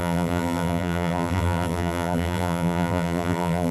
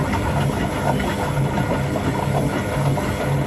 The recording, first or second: second